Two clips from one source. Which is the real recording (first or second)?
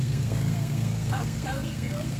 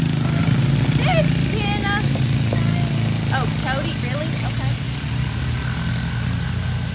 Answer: second